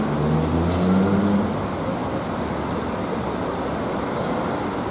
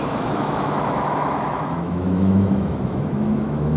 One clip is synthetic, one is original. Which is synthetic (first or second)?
second